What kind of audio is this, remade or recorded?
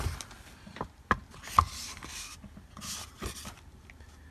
recorded